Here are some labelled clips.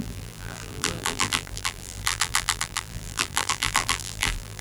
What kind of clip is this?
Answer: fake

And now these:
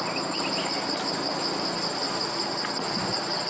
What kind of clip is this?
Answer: real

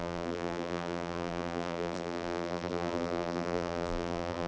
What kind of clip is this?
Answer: fake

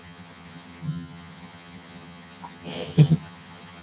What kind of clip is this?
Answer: fake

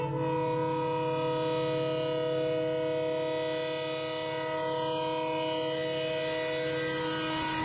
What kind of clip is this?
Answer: real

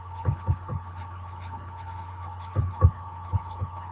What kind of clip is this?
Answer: fake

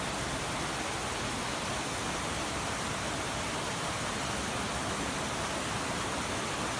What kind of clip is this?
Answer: real